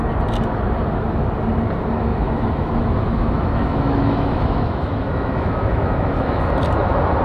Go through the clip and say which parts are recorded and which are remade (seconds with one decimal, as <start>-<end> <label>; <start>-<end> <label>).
0.0-2.1 recorded; 2.1-6.4 remade; 6.4-7.2 recorded